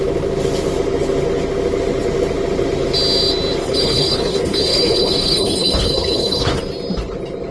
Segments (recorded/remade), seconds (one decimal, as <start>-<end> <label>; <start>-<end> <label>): 0.0-3.6 recorded; 3.6-6.6 remade; 6.6-7.5 recorded